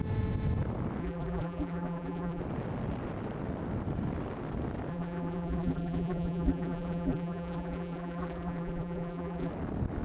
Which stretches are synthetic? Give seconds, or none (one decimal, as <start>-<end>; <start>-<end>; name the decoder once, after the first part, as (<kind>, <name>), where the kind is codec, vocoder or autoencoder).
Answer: 1.0-2.4 (vocoder, BigVGAN v2); 4.9-9.5